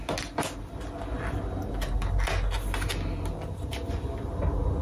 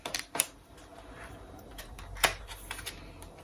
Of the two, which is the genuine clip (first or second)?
first